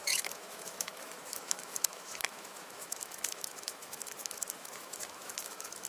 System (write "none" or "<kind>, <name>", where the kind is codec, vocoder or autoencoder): autoencoder, DAC-VAE